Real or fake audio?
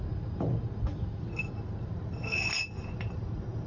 real